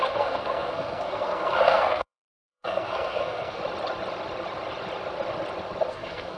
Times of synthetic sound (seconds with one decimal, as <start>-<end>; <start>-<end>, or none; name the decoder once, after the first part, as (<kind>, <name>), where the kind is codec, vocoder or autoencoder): 0.0-3.6 (codec, SNAC); 5.9-6.4